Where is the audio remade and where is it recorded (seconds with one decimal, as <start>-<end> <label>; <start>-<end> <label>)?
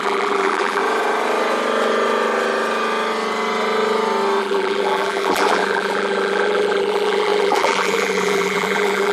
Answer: 0.0-0.8 remade; 0.8-4.4 recorded; 4.4-9.1 remade